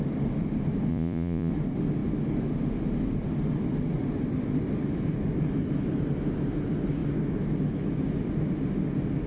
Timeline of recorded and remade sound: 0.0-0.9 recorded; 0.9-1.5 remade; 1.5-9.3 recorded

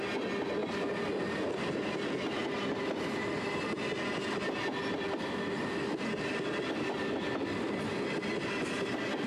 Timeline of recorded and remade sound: 0.0-9.3 recorded

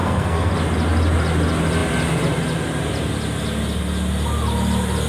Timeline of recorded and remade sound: 0.0-0.5 remade; 0.5-5.1 recorded